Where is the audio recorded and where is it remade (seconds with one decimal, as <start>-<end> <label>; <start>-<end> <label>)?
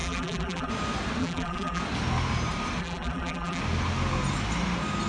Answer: 0.0-0.7 remade; 0.7-1.2 recorded; 1.2-1.8 remade; 1.8-2.8 recorded; 2.8-3.6 remade; 3.6-5.1 recorded